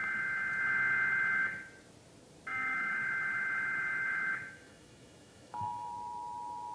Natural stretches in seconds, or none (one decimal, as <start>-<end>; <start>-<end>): 0.0-2.5; 5.9-6.7